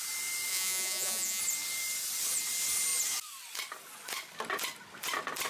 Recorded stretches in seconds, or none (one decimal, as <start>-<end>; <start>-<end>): 0.0-0.5; 1.4-5.5